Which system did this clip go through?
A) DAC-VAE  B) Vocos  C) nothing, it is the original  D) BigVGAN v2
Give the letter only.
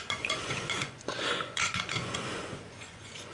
B